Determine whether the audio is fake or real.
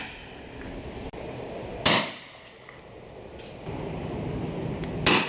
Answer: real